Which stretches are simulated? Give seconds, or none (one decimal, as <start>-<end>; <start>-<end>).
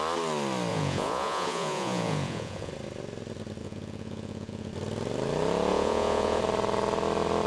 0.7-2.7; 3.6-4.7; 5.7-6.4